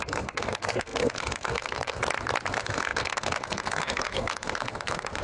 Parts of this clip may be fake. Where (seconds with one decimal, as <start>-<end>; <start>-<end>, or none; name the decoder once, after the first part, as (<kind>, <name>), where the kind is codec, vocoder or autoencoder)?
0.0-2.0 (codec, SNAC); 2.5-5.2